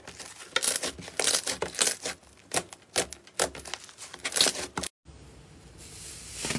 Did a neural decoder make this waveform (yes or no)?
no